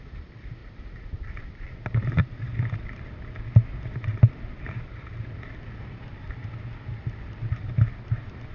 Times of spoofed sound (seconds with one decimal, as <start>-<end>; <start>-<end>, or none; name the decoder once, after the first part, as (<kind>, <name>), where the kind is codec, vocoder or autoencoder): 0.6-2.4 (vocoder, BigVGAN v2); 4.1-5.2